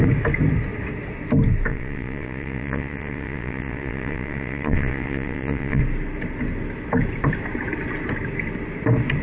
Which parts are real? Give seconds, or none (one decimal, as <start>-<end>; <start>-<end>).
0.0-1.7; 5.8-9.2